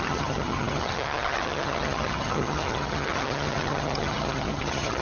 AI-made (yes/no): yes